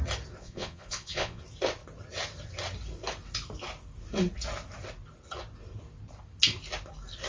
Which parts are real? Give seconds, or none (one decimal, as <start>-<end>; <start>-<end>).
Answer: 0.0-0.4; 1.4-7.3